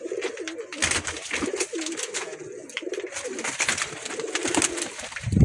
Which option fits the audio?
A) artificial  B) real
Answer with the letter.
B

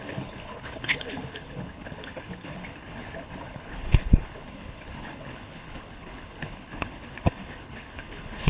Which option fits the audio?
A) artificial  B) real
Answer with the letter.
A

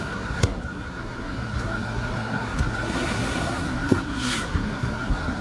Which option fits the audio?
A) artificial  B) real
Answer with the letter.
A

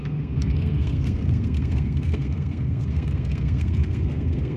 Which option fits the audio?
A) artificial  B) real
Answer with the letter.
A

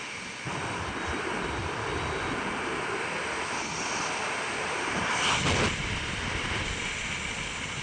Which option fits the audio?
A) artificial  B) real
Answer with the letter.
B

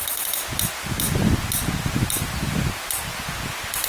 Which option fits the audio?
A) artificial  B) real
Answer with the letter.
B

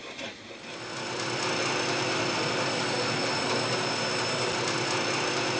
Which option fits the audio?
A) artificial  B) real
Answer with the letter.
B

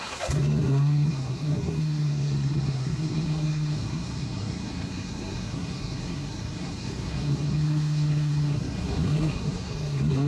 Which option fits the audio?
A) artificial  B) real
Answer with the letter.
A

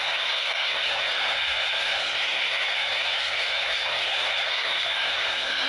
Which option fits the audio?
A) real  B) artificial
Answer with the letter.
B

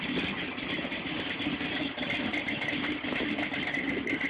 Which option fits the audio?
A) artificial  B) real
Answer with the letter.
B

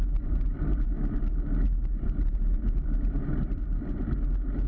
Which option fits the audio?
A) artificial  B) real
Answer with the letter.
A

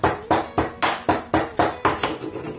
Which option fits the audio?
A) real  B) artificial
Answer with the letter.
A